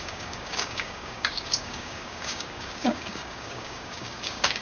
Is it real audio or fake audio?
fake